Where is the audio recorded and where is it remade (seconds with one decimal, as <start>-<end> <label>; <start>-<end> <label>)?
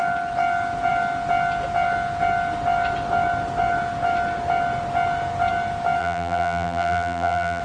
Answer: 0.0-6.0 recorded; 6.0-7.6 remade